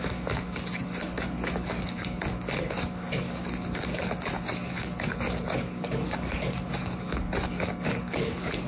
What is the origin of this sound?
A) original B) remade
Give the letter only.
B